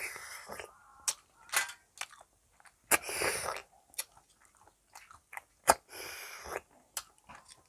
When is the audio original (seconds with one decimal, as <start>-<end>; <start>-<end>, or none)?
0.0-7.7